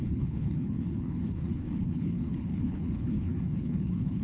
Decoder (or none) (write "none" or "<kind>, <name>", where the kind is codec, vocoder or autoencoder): codec, HILCodec